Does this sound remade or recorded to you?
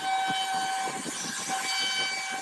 recorded